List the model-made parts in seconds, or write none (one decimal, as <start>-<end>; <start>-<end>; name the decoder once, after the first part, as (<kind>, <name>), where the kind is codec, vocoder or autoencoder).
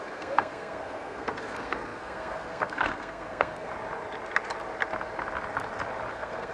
0.0-3.7 (codec, SNAC); 6.1-6.5